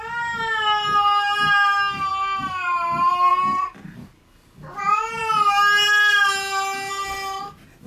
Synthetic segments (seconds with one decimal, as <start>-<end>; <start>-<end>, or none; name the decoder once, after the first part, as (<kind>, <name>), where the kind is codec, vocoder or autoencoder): none